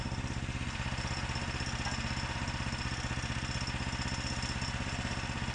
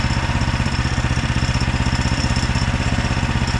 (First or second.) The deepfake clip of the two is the second